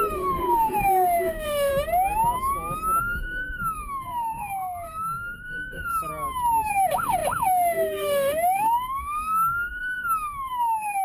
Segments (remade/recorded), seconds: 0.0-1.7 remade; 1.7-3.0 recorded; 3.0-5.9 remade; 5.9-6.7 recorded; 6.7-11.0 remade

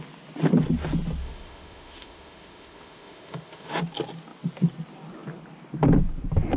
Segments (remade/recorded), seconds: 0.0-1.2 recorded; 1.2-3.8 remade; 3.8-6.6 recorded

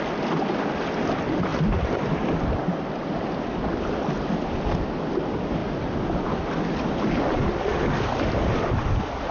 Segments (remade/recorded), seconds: 0.0-9.3 recorded